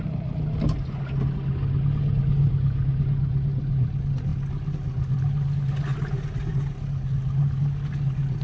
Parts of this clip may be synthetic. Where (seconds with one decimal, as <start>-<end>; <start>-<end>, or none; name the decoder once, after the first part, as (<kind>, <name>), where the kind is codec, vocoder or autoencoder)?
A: none